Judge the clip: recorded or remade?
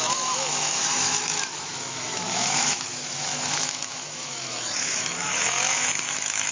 remade